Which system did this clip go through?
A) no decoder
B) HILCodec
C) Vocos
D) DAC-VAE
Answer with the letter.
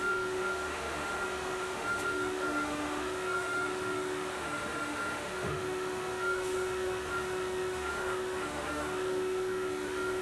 D